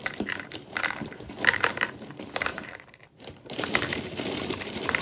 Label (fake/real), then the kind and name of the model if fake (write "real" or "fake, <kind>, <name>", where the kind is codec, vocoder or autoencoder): fake, vocoder, BigVGAN v2